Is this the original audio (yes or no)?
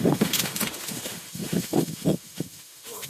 no